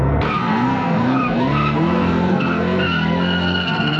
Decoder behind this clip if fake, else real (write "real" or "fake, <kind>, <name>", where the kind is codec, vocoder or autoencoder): fake, codec, SNAC